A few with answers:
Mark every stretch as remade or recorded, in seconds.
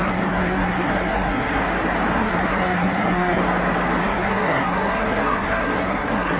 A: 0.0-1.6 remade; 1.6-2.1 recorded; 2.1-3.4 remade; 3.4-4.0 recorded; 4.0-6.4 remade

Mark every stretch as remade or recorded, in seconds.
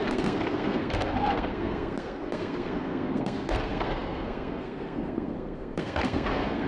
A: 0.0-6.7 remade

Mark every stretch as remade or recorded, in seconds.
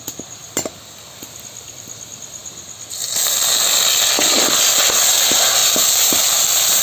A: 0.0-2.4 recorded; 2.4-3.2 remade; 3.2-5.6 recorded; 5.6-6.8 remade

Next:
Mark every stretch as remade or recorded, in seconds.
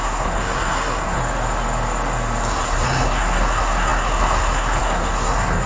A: 0.0-1.2 remade; 1.2-2.5 recorded; 2.5-5.7 remade